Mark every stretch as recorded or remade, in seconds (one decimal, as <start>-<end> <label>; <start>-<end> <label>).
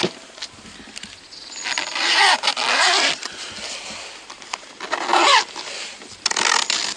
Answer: 0.0-7.0 recorded